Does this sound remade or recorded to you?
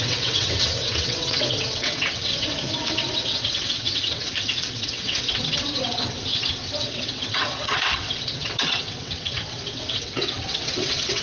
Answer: remade